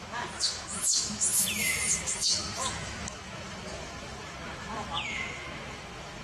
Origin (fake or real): fake